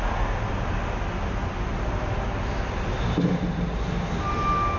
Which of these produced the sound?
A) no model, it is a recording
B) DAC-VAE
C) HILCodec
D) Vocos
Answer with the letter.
A